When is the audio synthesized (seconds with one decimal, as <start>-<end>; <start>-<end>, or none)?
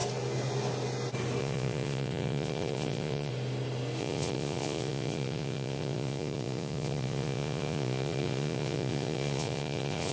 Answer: 1.4-3.3; 4.0-10.1